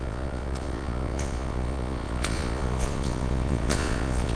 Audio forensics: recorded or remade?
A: remade